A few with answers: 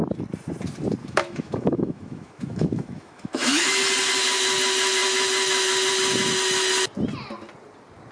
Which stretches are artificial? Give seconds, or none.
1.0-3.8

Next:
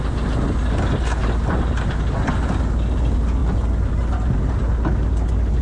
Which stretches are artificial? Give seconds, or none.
none

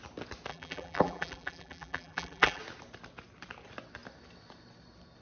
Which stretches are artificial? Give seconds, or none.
0.5-2.6

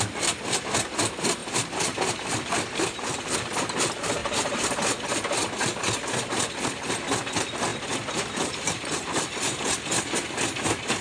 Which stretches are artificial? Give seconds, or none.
1.4-3.6; 7.7-10.1

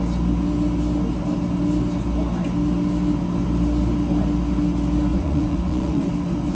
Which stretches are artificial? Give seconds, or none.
5.1-6.1

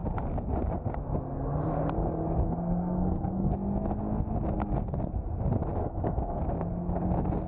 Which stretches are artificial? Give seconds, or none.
2.4-3.5; 5.8-6.4

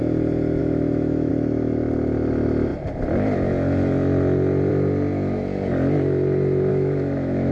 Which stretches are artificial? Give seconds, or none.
0.6-1.3; 6.7-7.5